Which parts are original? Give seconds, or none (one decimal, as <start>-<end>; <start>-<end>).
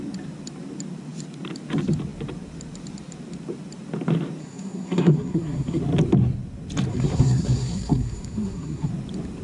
0.0-4.4; 5.8-6.9; 8.9-9.4